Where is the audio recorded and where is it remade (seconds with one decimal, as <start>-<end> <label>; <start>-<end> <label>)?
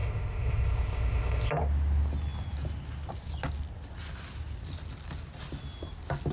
0.0-1.5 remade; 1.5-6.3 recorded